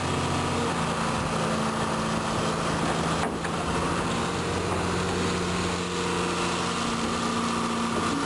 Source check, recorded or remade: recorded